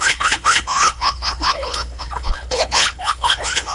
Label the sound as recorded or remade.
remade